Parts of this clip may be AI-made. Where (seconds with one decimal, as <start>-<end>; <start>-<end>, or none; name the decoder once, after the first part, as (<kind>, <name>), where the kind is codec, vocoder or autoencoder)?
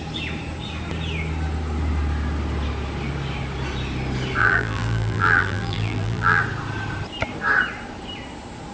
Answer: 4.4-6.4 (vocoder, BigVGAN v2)